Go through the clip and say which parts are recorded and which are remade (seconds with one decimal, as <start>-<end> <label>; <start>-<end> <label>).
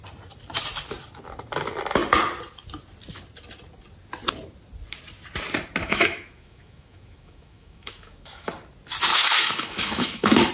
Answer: 0.0-5.8 recorded; 5.8-8.5 remade; 8.5-9.1 recorded; 9.1-10.5 remade